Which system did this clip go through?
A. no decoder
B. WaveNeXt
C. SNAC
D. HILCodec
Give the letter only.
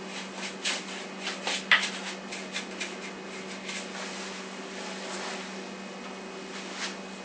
A